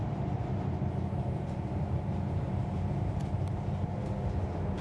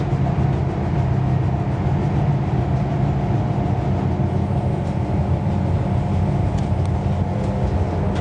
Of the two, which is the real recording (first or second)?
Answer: second